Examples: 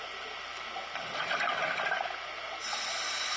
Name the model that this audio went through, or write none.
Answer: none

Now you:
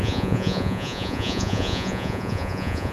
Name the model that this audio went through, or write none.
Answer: vocoder, Vocos